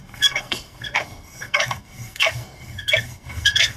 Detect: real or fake fake